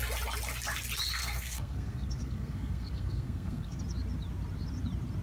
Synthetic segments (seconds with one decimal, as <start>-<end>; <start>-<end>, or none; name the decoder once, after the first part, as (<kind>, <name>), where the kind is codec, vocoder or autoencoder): 1.2-3.8 (codec, SNAC)